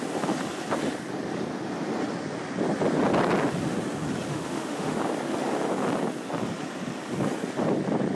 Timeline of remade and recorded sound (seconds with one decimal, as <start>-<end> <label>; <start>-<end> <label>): 0.0-4.3 recorded; 4.3-5.0 remade; 5.0-8.1 recorded